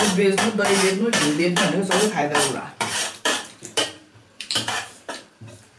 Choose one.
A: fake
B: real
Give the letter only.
A